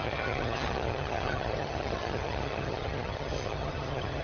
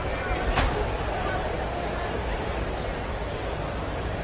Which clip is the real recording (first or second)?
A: second